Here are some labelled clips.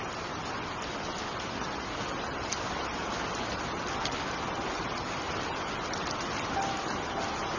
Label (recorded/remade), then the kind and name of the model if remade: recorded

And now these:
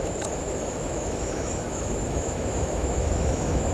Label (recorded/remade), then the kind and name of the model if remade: remade, autoencoder, DAC-VAE